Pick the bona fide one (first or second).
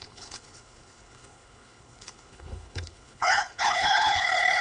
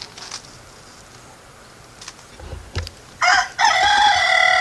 second